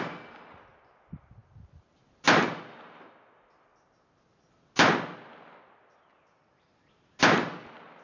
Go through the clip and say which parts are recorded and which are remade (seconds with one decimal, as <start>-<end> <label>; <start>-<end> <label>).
0.0-8.0 recorded